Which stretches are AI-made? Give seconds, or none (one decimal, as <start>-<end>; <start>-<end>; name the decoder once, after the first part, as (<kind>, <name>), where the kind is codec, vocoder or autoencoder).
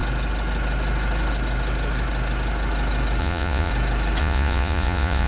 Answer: 3.2-3.7 (vocoder, Vocos); 4.2-5.3